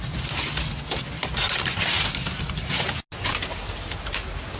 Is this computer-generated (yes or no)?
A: no